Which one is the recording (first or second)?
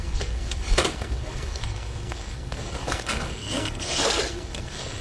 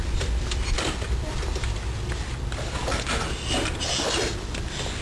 second